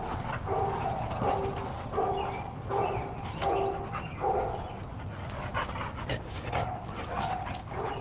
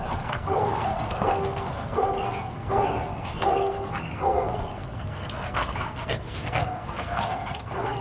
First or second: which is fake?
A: second